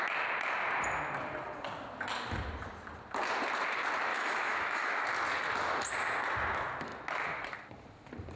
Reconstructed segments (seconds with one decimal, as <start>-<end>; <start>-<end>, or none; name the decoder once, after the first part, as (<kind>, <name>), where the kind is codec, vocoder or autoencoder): 4.1-5.0 (autoencoder, DAC-VAE)